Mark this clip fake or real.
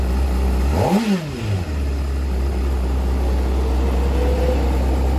real